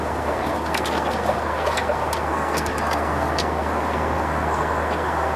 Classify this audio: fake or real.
fake